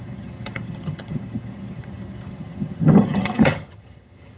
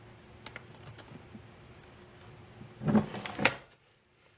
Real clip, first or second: second